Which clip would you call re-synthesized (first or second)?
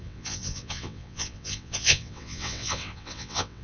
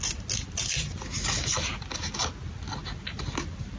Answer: first